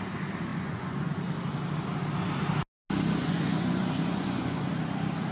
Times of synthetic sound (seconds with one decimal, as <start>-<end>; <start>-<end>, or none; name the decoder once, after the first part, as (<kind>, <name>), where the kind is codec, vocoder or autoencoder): 0.5-1.1 (vocoder, Vocos); 3.2-4.7

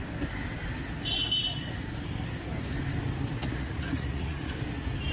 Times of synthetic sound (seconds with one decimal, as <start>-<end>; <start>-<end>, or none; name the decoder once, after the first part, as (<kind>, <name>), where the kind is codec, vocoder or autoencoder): 3.4-4.5 (vocoder, Vocos)

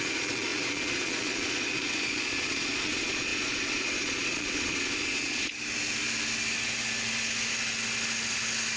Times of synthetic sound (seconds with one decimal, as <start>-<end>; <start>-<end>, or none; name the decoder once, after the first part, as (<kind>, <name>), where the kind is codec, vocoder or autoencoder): 0.0-5.5 (vocoder, Vocos)

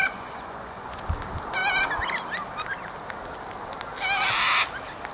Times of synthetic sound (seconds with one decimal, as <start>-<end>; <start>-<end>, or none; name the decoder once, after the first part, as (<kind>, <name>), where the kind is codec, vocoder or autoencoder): 0.0-1.0 (vocoder, Vocos)

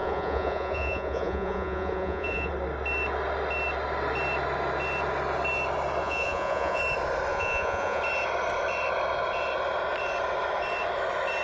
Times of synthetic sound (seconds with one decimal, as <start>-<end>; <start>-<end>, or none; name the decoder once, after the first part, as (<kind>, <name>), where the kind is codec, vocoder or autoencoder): 0.0-2.5 (vocoder, Vocos); 6.0-6.8; 7.3-8.0

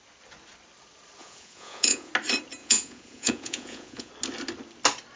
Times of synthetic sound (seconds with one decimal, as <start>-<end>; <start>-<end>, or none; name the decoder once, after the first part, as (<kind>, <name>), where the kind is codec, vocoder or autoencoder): 1.2-2.1 (vocoder, Vocos); 2.6-4.1